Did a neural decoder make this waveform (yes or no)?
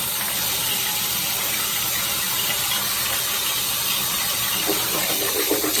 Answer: no